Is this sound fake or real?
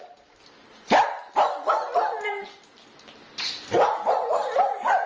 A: real